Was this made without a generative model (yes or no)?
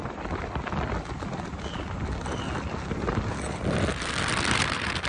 yes